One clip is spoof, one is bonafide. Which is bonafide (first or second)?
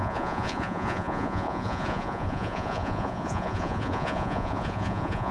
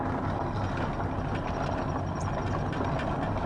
second